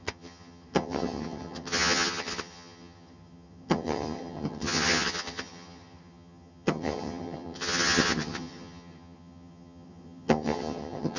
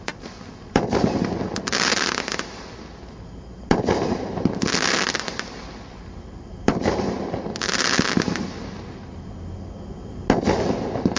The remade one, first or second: first